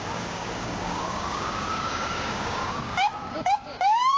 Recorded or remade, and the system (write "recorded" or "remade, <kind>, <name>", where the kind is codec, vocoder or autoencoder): remade, codec, DAC